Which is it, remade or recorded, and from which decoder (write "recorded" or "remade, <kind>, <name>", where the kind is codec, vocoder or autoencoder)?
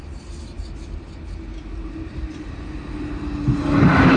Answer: recorded